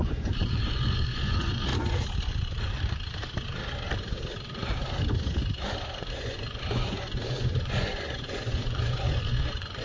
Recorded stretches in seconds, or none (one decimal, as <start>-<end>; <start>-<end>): 1.7-6.0